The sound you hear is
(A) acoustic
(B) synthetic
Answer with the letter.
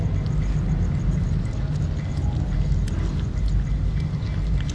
A